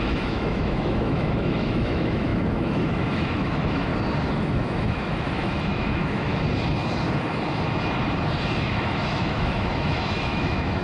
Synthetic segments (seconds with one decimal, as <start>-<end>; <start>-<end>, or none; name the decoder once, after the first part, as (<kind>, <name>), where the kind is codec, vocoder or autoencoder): 0.0-3.9 (autoencoder, DAC-VAE); 4.4-6.3; 8.6-10.8